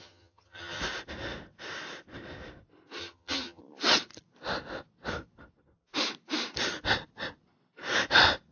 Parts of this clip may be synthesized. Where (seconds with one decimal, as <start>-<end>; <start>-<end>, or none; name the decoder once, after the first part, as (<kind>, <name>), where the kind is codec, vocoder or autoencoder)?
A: 0.0-0.8 (vocoder, HiFi-GAN); 3.0-3.6